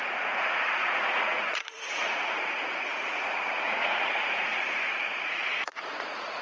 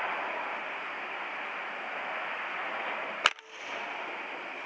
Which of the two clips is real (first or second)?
second